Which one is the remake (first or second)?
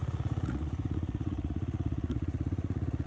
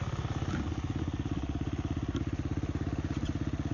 first